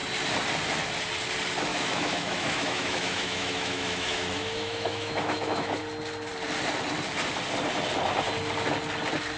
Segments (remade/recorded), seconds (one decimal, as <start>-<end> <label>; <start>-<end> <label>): 0.0-1.7 recorded; 1.7-5.8 remade; 5.8-9.4 recorded